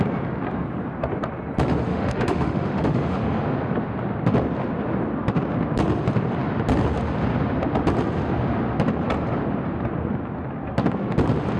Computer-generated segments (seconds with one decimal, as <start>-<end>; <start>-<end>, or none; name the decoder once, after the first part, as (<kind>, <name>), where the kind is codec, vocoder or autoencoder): 1.9-3.4 (autoencoder, DAC-VAE)